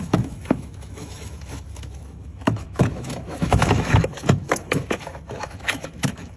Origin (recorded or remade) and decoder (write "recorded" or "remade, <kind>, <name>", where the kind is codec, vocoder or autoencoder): remade, autoencoder, DAC-VAE